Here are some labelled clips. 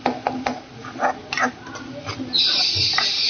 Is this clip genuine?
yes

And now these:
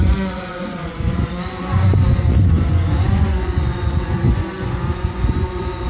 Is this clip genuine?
no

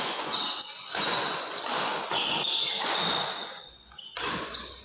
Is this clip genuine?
no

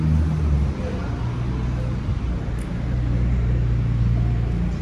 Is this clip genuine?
yes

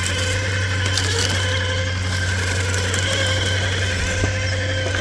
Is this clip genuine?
yes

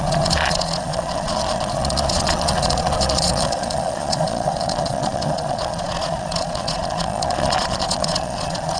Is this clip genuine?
no